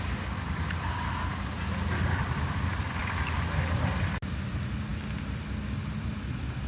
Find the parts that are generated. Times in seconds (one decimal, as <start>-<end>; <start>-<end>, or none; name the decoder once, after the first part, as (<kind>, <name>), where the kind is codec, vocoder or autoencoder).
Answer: none